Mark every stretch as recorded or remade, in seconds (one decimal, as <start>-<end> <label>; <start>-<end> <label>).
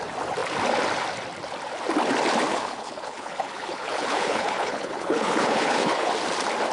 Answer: 0.0-2.5 recorded; 2.5-6.1 remade; 6.1-6.7 recorded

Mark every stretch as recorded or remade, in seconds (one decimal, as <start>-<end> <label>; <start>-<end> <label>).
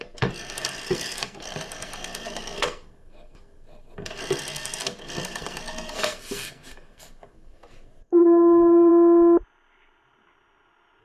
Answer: 0.0-8.9 remade; 8.9-11.0 recorded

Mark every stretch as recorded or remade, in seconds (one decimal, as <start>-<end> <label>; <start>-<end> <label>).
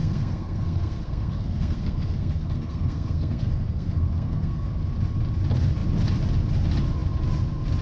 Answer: 0.0-4.7 remade; 4.7-7.8 recorded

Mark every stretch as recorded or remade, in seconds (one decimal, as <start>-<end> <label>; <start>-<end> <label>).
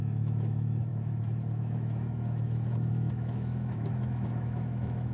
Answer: 0.0-5.1 remade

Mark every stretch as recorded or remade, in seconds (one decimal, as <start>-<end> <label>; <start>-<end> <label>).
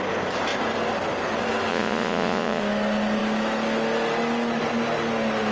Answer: 0.0-1.7 recorded; 1.7-2.6 remade; 2.6-5.5 recorded